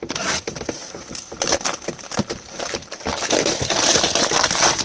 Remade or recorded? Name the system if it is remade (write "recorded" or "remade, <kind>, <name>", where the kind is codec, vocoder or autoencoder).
remade, vocoder, BigVGAN v2